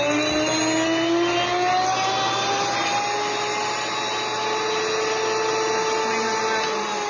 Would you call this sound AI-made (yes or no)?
no